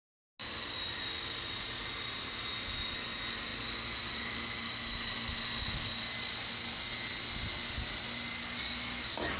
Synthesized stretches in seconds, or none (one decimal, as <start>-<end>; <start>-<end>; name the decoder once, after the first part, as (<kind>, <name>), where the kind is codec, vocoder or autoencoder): none